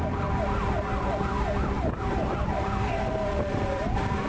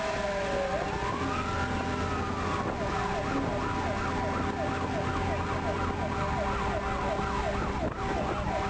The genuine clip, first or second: second